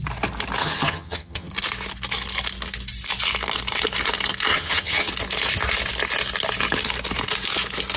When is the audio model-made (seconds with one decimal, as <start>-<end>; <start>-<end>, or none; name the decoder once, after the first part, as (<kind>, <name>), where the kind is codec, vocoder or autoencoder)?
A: 0.6-1.5 (vocoder, HiFi-GAN); 4.5-5.1